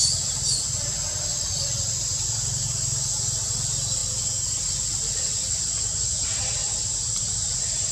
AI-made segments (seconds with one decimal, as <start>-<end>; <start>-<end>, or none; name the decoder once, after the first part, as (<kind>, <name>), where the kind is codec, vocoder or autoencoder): none